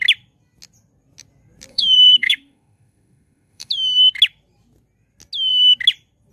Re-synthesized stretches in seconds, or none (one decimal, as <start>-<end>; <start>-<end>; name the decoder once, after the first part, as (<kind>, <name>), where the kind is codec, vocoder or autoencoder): 1.7-3.7 (autoencoder, DAC-VAE)